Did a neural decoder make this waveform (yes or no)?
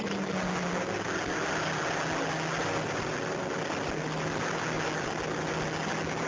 no